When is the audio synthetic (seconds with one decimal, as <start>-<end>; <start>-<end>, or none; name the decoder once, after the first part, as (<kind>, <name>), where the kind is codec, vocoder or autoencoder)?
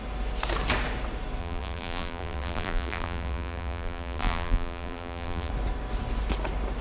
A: 1.4-5.5 (vocoder, BigVGAN v2)